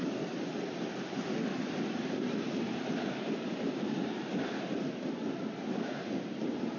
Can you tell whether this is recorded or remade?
recorded